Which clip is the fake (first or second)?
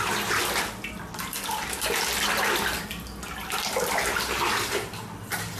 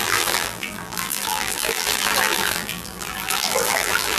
second